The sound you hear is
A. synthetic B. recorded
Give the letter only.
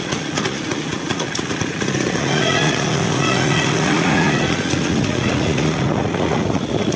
A